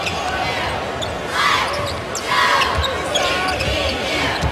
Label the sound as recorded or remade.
recorded